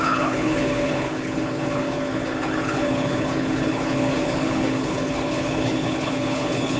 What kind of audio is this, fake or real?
fake